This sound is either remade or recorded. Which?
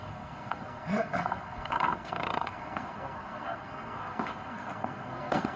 remade